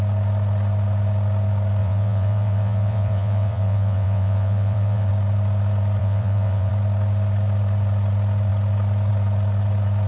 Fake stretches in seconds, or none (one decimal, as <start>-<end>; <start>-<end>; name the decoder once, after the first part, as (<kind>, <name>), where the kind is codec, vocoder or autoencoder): 1.8-5.1 (vocoder, WaveNeXt); 6.0-6.7